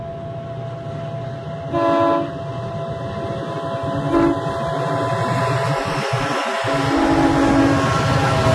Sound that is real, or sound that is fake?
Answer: real